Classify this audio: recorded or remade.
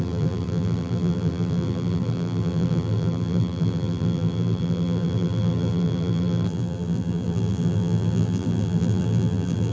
remade